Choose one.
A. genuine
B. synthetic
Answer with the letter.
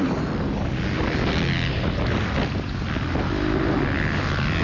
A